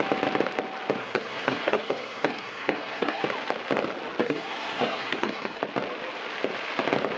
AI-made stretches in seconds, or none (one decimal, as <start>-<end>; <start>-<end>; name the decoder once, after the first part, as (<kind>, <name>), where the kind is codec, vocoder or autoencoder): 1.0-3.2 (codec, SNAC); 4.2-5.6